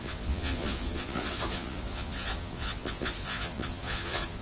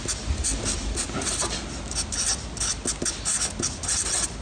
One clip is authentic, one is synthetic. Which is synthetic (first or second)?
first